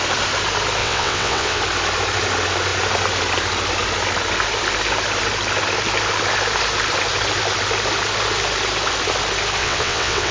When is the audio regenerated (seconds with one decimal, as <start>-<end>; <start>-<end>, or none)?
0.8-1.6; 9.6-10.3